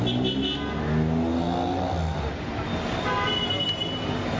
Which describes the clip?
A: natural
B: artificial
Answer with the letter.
A